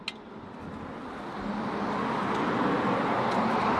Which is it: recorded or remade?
recorded